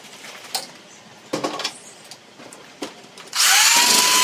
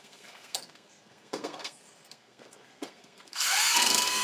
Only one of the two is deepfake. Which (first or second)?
second